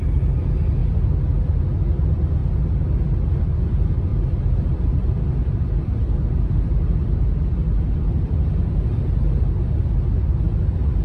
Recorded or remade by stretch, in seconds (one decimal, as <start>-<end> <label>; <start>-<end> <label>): 0.0-11.0 recorded